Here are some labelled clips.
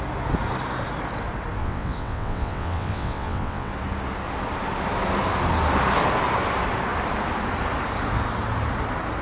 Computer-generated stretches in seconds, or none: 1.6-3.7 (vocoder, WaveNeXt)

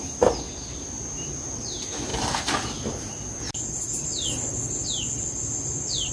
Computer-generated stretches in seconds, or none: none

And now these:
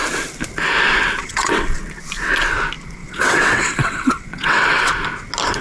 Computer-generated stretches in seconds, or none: 1.2-1.8 (vocoder, WaveNeXt); 3.0-4.9

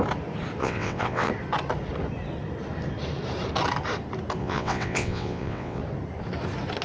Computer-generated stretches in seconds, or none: 0.6-1.3 (vocoder, WaveNeXt); 4.4-5.8

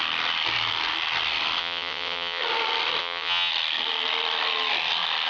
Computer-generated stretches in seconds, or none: 1.6-2.4 (vocoder, WaveNeXt); 3.0-3.5